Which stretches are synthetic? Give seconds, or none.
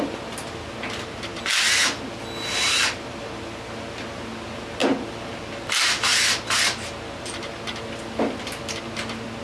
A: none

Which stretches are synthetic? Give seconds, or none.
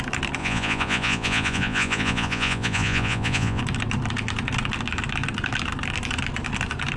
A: 0.4-3.6 (vocoder, Vocos)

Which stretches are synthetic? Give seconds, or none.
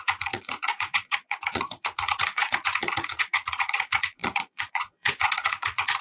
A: 0.0-6.0 (vocoder, Vocos)